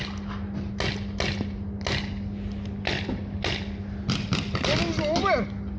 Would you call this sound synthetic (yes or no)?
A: no